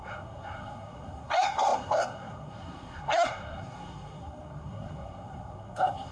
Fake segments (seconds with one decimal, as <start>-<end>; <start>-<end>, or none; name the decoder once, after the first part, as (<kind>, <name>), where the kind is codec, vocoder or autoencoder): 0.0-6.1 (codec, SNAC)